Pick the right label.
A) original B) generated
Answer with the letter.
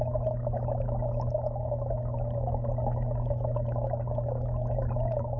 B